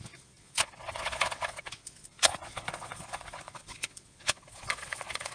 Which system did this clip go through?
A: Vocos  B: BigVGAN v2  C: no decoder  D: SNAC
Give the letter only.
A